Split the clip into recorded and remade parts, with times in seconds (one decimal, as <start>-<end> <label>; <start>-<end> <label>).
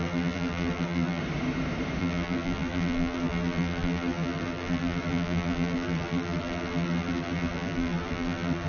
0.0-1.2 remade; 1.2-2.0 recorded; 2.0-8.7 remade